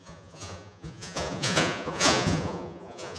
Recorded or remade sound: remade